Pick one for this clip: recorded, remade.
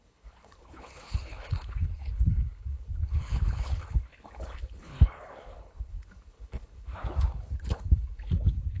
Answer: remade